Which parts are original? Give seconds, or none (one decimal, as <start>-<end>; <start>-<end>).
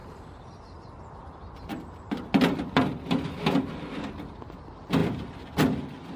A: 0.0-6.2